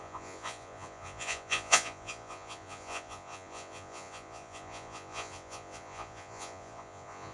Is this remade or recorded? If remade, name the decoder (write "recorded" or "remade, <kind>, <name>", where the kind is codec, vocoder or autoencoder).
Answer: remade, vocoder, Vocos